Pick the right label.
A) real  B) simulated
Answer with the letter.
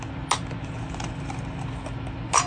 A